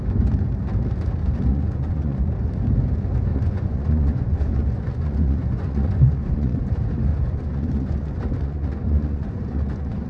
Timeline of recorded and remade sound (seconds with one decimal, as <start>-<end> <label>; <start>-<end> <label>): 0.0-1.5 recorded; 1.5-2.2 remade; 2.2-3.3 recorded; 3.3-6.6 remade; 6.6-7.1 recorded; 7.1-10.1 remade